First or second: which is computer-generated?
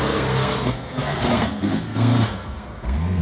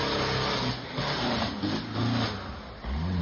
first